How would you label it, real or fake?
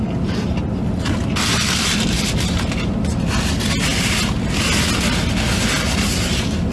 real